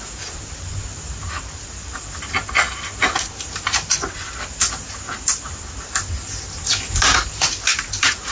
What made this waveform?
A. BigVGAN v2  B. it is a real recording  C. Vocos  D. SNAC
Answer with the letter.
B